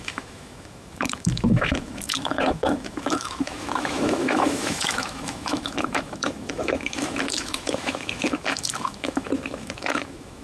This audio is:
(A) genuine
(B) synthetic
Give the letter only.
B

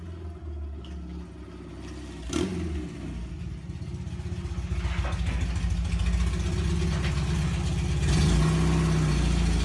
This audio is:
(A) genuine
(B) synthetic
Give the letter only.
A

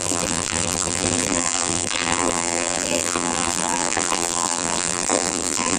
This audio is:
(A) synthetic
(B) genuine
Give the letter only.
A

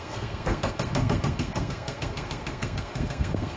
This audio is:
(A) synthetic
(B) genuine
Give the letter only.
A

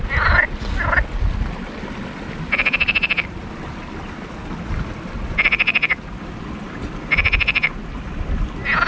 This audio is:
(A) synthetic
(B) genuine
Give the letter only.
B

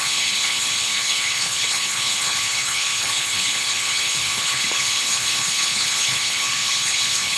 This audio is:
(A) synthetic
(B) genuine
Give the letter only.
A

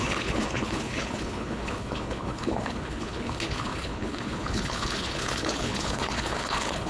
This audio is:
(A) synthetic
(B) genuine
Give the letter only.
A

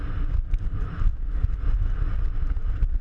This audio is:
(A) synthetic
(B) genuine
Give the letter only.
B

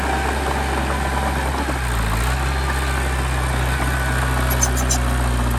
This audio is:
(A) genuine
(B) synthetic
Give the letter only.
A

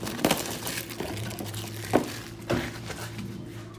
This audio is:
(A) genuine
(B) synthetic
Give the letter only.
A